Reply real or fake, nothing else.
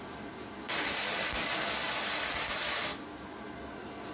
fake